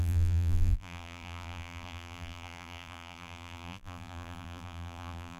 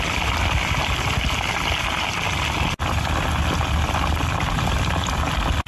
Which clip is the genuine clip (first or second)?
second